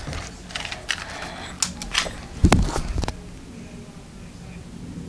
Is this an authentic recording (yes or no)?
yes